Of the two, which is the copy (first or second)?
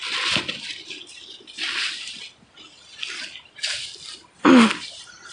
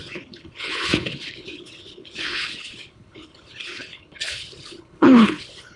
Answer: second